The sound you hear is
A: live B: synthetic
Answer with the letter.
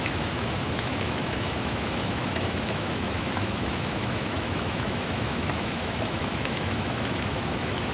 B